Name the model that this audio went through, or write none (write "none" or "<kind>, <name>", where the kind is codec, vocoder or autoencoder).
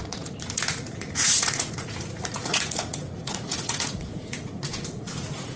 vocoder, Vocos